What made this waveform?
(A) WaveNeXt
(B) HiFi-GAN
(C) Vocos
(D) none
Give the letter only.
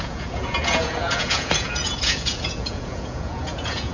C